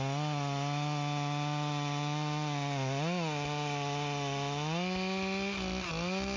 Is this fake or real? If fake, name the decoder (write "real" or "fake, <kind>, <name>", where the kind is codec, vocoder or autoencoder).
real